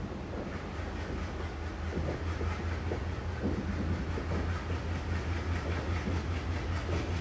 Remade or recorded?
recorded